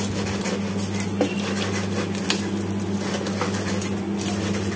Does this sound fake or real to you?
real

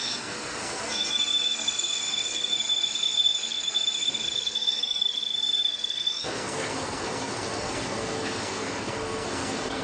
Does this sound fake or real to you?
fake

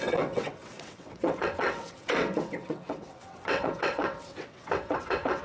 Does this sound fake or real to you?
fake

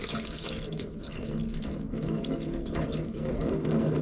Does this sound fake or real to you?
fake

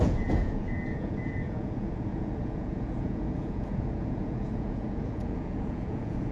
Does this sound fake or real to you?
fake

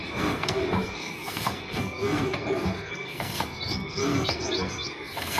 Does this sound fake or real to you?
fake